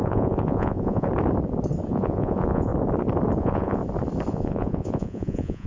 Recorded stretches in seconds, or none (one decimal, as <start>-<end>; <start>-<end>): 1.1-1.9; 2.7-3.4; 3.8-4.3